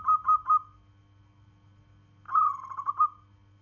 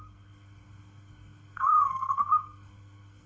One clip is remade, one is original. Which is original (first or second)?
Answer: first